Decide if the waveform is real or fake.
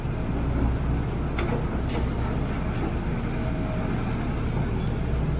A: real